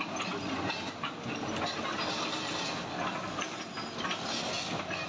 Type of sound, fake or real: real